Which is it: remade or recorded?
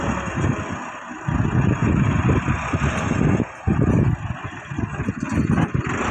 recorded